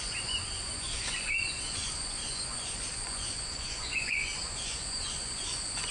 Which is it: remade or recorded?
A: remade